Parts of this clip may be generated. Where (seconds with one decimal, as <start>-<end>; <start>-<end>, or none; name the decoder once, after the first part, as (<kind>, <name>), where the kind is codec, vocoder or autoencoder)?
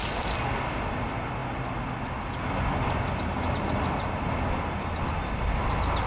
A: none